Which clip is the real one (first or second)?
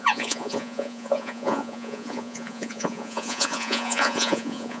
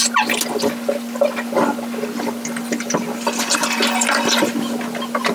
second